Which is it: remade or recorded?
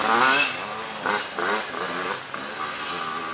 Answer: recorded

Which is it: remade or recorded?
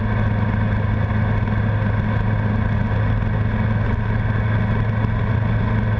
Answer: recorded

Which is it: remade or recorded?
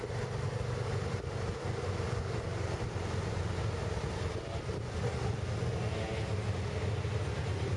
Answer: recorded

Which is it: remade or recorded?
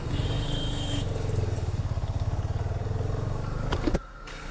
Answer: remade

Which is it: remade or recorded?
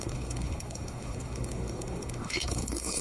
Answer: remade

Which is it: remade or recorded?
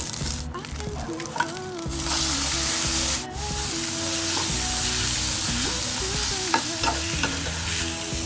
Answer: recorded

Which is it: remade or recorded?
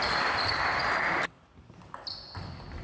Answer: recorded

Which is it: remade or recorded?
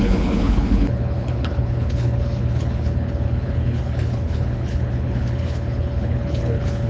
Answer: remade